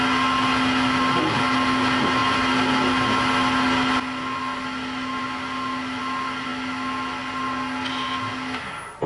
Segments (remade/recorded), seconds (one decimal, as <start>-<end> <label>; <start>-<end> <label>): 0.0-9.1 recorded